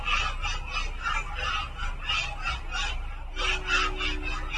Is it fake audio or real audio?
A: real